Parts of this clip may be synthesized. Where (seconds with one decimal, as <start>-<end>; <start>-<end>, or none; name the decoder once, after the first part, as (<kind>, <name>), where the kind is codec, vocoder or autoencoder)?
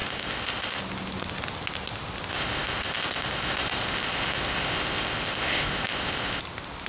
0.0-0.8 (codec, ZipCodec); 2.3-6.4